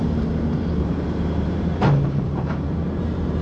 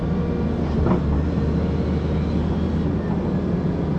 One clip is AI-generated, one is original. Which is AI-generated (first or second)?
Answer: first